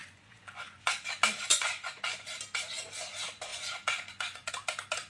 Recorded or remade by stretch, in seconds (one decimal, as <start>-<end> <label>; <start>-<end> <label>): 0.0-0.9 remade; 0.9-1.5 recorded; 1.5-2.3 remade; 2.3-3.5 recorded; 3.5-4.5 remade; 4.5-5.1 recorded

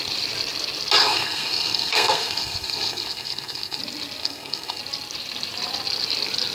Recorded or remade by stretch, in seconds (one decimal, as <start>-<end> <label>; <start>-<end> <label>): 0.0-1.0 recorded; 1.0-3.8 remade; 3.8-4.2 recorded; 4.2-4.8 remade; 4.8-6.5 recorded

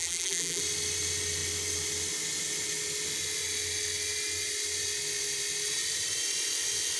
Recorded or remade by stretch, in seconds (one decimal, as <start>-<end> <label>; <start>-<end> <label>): 0.0-0.6 remade; 0.6-7.0 recorded

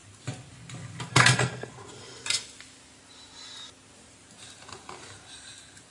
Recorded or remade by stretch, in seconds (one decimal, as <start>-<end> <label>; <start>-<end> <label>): 0.0-1.1 recorded; 1.1-1.7 remade; 1.7-5.9 recorded

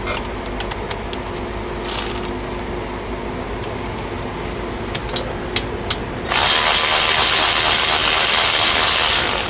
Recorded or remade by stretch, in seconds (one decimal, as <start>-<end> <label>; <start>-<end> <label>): 0.0-9.5 recorded

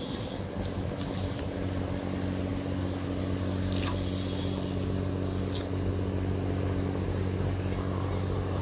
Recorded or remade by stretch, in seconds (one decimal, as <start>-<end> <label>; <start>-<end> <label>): 0.0-8.6 recorded